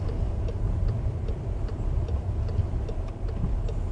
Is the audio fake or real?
fake